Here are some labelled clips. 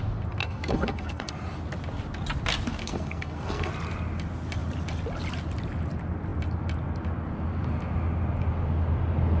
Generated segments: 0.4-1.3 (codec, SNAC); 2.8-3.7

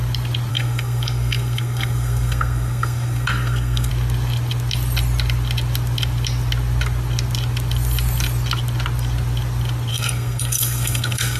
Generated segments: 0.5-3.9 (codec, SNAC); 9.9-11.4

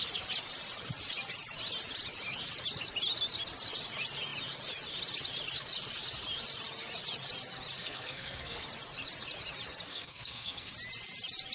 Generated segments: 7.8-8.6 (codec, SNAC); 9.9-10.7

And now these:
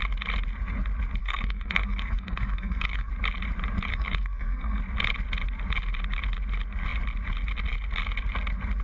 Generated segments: 1.2-3.1 (codec, SNAC); 3.9-4.8